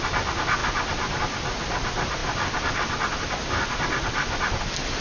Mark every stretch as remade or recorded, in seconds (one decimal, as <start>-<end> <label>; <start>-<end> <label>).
0.0-0.6 recorded; 0.6-1.2 remade; 1.2-5.0 recorded